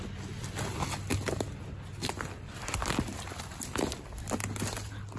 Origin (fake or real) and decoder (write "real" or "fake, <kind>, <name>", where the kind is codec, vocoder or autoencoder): real